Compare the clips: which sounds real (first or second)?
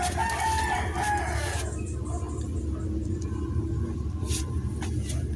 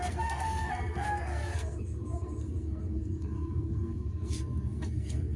first